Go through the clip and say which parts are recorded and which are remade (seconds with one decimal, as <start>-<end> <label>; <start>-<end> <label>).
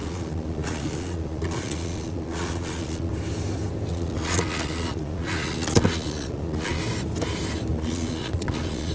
0.0-3.1 remade; 3.1-3.9 recorded; 3.9-6.8 remade; 6.8-7.7 recorded; 7.7-8.9 remade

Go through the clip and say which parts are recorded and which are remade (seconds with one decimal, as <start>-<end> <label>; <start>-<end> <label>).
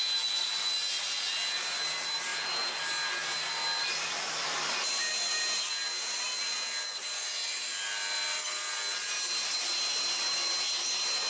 0.0-11.3 recorded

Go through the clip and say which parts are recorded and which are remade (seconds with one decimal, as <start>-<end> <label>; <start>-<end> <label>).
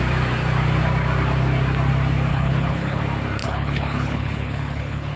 0.0-2.3 recorded; 2.3-3.0 remade; 3.0-3.4 recorded; 3.4-5.2 remade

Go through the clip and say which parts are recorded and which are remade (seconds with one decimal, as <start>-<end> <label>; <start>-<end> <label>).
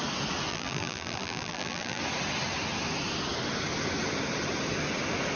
0.0-0.5 recorded; 0.5-2.0 remade; 2.0-5.4 recorded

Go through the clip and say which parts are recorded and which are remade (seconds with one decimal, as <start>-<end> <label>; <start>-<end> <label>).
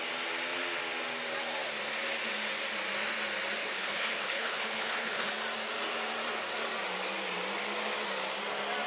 0.0-3.6 recorded; 3.6-5.3 remade; 5.3-8.9 recorded